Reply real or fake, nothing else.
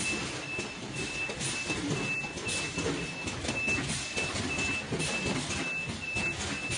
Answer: real